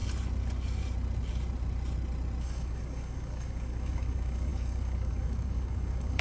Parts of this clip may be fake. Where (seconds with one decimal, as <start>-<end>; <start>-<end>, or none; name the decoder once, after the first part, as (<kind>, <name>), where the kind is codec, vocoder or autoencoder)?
2.4-6.2 (codec, DAC)